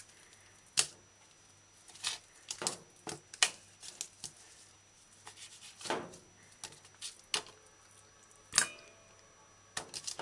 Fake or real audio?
real